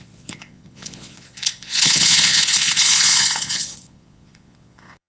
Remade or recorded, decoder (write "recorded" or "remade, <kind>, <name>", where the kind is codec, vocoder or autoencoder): remade, vocoder, Vocos